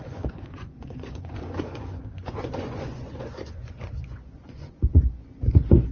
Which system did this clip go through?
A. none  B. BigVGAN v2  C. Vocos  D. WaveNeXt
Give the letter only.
C